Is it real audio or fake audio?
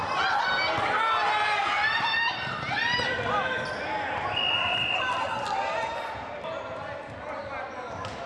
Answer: real